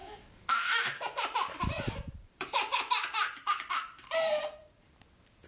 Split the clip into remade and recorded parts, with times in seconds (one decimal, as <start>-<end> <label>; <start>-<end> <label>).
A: 0.0-0.5 recorded; 0.5-5.5 remade